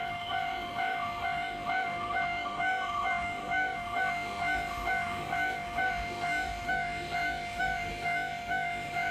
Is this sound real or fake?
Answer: fake